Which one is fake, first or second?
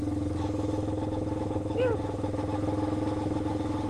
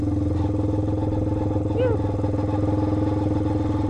first